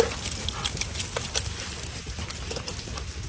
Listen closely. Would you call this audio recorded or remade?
recorded